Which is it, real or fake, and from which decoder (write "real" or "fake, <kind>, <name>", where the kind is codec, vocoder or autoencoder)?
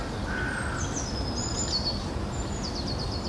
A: real